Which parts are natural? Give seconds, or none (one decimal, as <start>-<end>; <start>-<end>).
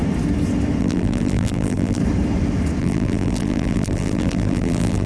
0.0-0.8; 2.0-2.8